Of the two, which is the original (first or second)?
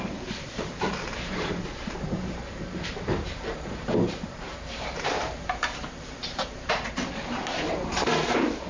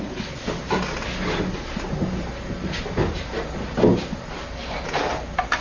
second